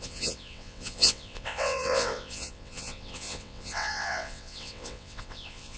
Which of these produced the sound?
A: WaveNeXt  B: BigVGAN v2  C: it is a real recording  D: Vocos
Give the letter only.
A